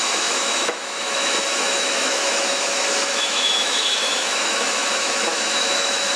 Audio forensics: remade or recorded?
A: remade